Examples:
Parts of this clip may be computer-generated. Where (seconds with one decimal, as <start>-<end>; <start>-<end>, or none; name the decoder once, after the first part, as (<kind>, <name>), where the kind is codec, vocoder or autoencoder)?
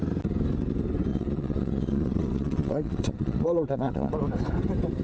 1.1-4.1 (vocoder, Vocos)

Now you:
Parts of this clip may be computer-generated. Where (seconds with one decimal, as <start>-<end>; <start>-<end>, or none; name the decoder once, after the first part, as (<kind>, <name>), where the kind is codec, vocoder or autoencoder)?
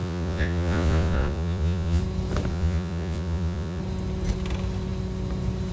0.0-2.0 (vocoder, Vocos); 2.5-3.8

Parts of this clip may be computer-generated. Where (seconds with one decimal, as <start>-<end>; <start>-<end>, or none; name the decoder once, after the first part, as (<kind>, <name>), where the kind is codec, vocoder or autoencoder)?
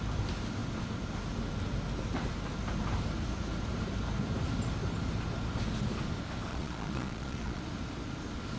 6.5-7.6 (vocoder, Vocos)